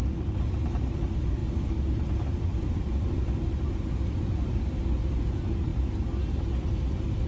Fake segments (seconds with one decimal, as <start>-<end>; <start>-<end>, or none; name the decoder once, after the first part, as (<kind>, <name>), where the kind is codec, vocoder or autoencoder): none